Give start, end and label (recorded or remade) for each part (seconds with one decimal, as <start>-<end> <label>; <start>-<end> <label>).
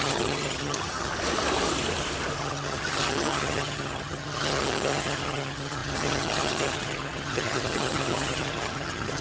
0.0-1.1 remade; 1.1-2.4 recorded; 2.4-9.2 remade